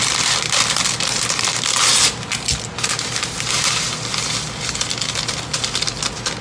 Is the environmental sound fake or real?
real